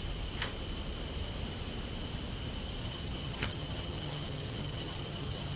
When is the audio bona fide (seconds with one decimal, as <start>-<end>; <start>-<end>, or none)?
0.0-2.8

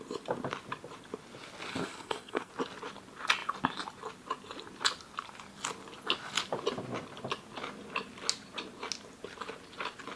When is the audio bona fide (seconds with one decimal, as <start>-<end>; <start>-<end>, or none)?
0.0-1.7; 2.5-10.2

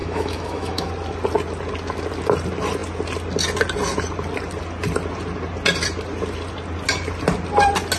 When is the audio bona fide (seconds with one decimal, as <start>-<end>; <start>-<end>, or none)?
0.9-8.0

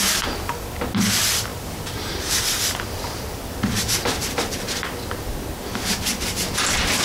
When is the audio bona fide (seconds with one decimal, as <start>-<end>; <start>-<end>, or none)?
0.0-1.5; 5.7-7.0

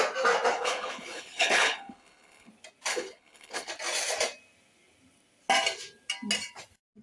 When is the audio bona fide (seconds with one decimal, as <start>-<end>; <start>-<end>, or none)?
0.0-0.5; 2.5-2.9; 3.7-7.0

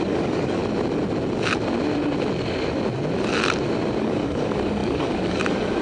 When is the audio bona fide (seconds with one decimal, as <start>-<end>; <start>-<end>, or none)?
0.6-4.0

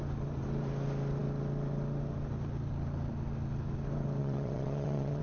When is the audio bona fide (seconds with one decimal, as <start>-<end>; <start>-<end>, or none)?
0.0-4.2